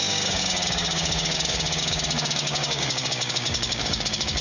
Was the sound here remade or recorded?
remade